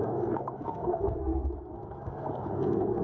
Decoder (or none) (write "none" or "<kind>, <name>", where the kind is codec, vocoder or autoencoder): codec, SNAC